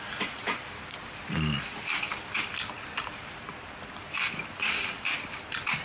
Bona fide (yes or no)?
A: no